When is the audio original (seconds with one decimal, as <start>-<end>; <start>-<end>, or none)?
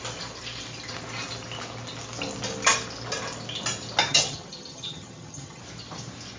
0.0-4.1; 5.6-6.4